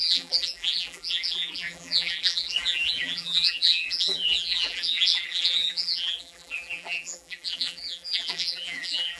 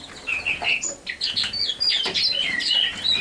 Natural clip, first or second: second